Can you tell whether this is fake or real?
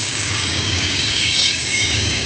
fake